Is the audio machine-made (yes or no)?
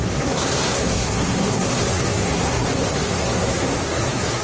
yes